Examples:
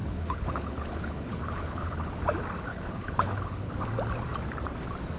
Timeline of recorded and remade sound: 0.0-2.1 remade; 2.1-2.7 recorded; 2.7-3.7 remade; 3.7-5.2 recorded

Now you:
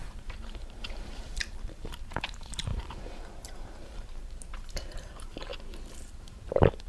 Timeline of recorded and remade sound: 0.0-5.5 remade; 5.5-6.0 recorded; 6.0-6.9 remade

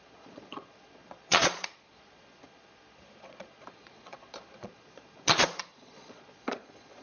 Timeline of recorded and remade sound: 0.0-7.0 remade

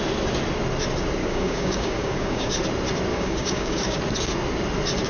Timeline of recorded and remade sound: 0.0-1.2 recorded; 1.2-2.5 remade; 2.5-3.1 recorded; 3.1-4.0 remade; 4.0-5.1 recorded

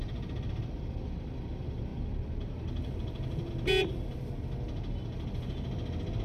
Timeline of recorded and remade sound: 0.0-6.2 recorded